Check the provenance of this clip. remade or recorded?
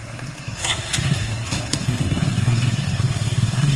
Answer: remade